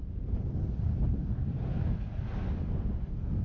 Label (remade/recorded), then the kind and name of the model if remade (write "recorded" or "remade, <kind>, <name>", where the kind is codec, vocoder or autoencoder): recorded